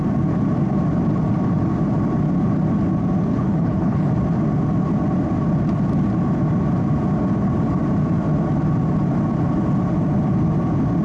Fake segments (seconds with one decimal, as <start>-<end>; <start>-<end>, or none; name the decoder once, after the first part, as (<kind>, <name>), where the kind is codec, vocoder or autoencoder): 3.3-4.1 (codec, HILCodec)